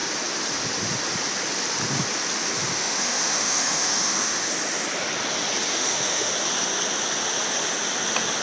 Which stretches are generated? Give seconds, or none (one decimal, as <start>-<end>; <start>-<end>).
2.7-4.5; 5.7-6.3